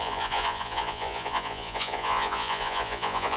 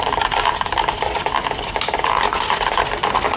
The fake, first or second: first